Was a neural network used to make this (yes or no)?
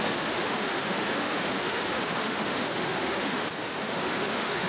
yes